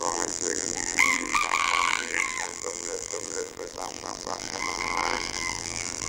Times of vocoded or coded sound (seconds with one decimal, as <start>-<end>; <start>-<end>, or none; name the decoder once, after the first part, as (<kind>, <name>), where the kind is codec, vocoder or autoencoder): 0.0-6.1 (vocoder, BigVGAN v2)